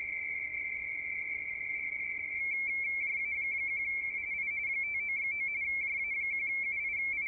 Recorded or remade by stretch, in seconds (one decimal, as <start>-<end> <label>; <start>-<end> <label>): 0.0-7.3 recorded